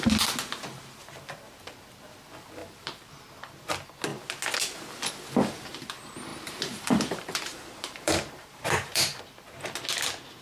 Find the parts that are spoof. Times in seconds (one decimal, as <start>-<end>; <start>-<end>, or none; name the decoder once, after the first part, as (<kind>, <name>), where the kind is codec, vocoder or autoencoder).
2.6-3.2 (vocoder, BigVGAN v2); 6.3-9.2